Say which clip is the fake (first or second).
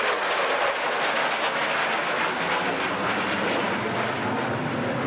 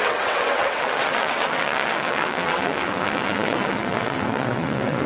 second